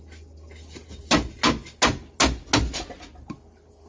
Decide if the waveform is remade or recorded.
recorded